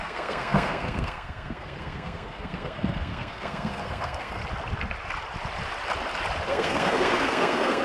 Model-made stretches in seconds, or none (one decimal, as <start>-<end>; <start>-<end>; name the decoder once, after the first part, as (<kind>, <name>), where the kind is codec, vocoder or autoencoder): 0.0-4.4 (codec, SNAC); 6.5-7.8